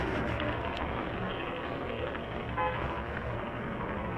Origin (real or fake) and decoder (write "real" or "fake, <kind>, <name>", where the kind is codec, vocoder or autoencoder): fake, codec, SNAC